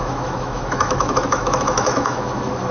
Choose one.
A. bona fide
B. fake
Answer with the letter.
B